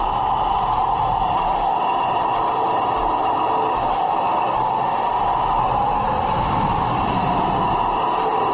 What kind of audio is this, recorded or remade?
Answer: recorded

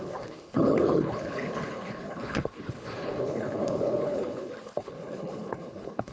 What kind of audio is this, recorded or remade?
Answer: remade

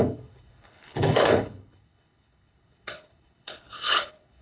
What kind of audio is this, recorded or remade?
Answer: remade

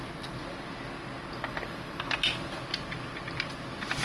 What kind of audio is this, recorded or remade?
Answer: recorded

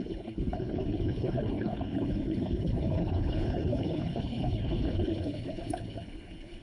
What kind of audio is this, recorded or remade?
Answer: remade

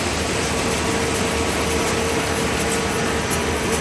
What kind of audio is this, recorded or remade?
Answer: recorded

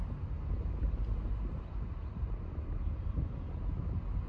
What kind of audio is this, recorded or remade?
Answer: recorded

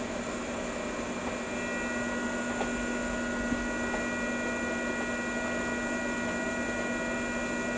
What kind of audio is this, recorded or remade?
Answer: recorded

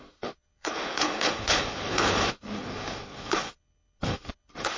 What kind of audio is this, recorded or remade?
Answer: remade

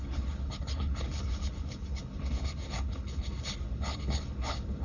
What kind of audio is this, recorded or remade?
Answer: remade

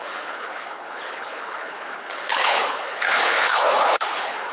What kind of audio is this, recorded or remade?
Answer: remade